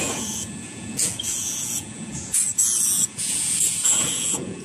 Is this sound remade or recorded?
remade